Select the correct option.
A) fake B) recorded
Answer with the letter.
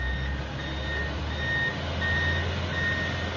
B